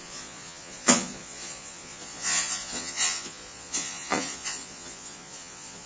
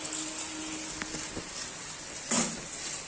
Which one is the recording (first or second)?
second